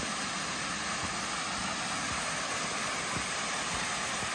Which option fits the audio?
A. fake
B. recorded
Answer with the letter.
B